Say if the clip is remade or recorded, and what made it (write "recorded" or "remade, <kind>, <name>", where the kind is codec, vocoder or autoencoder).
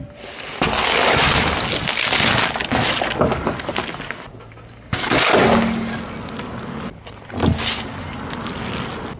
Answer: recorded